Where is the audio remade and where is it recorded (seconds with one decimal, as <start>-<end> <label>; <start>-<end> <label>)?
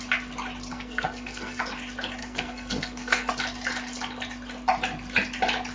0.0-0.7 recorded; 0.7-1.6 remade; 1.6-2.2 recorded; 2.2-3.3 remade; 3.3-5.7 recorded